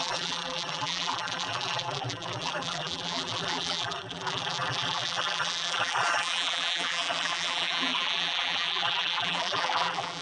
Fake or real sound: fake